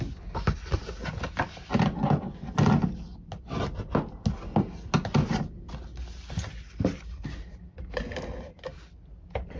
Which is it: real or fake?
real